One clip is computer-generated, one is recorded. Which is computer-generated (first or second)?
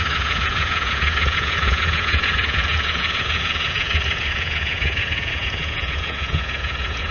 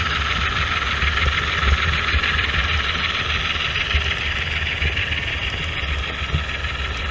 first